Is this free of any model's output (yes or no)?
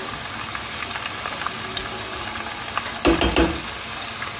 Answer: yes